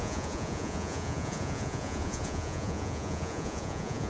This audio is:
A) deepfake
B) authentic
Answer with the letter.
A